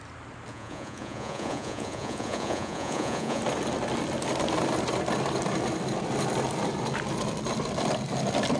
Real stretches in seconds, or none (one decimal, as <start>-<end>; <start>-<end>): 0.0-0.5; 3.4-8.6